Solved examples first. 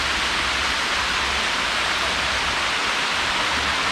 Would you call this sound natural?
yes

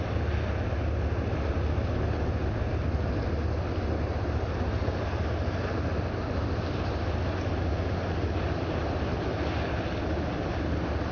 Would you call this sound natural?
yes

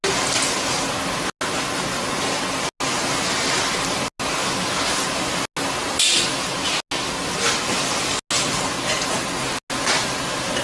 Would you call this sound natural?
yes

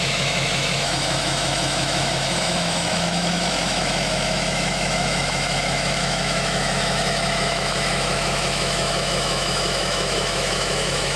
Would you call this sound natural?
no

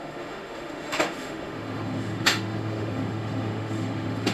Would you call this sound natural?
no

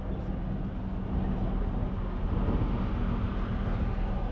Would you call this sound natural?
yes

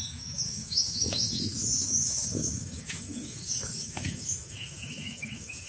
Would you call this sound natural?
no